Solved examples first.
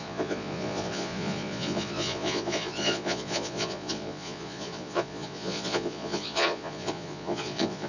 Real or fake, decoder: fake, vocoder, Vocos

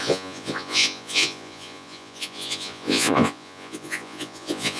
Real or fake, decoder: fake, vocoder, Vocos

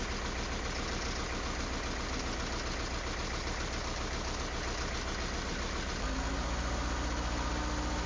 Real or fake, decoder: real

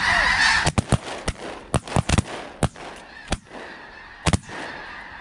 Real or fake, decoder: real